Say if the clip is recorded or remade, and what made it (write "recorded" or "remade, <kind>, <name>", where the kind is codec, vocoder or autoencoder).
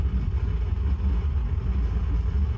recorded